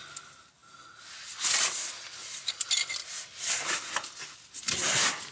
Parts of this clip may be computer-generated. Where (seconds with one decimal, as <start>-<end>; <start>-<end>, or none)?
none